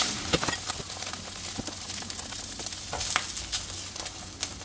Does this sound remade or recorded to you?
recorded